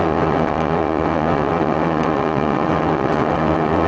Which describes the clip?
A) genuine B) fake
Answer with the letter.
B